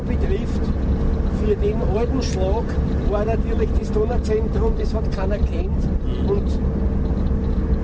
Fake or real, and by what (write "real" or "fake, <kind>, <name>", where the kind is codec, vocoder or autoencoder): real